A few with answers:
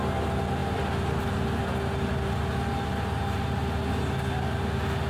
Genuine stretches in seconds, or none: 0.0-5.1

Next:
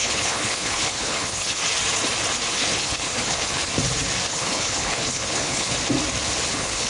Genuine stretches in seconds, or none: 1.6-2.5; 3.7-4.3; 5.8-6.5

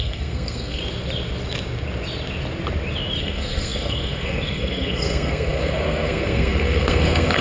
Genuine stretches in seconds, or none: 0.8-3.2